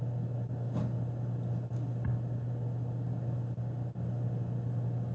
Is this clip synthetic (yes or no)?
no